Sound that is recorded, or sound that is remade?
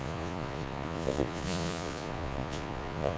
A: remade